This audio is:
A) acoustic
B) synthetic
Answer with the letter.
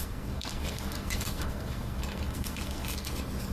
B